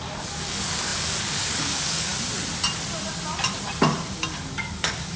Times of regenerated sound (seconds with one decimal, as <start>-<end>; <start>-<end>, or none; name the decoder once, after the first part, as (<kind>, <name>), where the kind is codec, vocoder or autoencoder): 0.0-2.1 (codec, DAC); 4.4-5.2